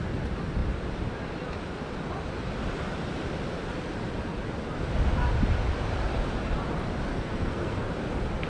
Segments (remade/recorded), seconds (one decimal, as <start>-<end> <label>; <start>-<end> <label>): 0.0-7.1 recorded; 7.1-7.9 remade; 7.9-8.5 recorded

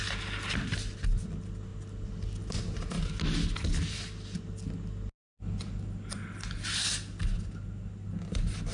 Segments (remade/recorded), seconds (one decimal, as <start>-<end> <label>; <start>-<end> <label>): 0.0-8.7 recorded

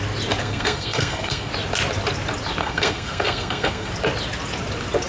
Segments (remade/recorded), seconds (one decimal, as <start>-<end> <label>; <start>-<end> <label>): 0.0-0.4 recorded; 0.4-1.5 remade; 1.5-2.6 recorded; 2.6-3.9 remade; 3.9-5.1 recorded

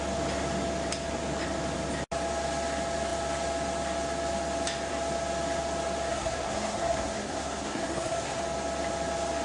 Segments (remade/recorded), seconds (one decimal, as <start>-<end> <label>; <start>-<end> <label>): 0.0-6.1 recorded; 6.1-8.4 remade; 8.4-9.4 recorded